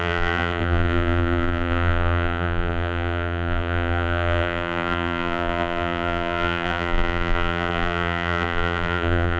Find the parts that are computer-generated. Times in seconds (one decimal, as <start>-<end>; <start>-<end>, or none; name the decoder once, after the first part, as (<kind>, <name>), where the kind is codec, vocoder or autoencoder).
0.0-9.4 (vocoder, BigVGAN v2)